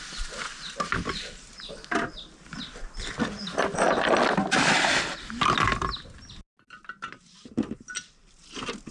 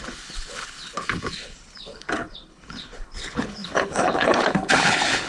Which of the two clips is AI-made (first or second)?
second